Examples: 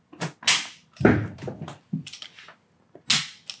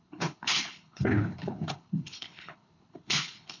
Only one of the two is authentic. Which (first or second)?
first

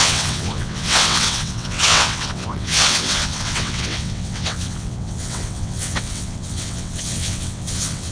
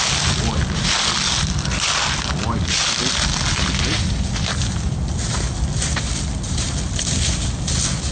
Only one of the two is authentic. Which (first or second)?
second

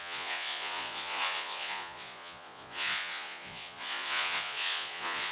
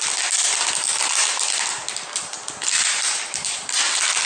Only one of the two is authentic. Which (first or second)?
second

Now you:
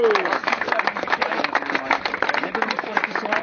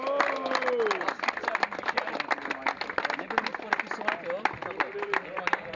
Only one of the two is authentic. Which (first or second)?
second